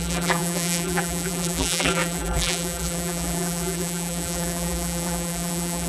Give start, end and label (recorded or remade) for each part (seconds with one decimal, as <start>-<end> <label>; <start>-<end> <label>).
0.0-5.9 remade